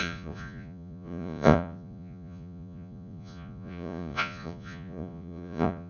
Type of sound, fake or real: fake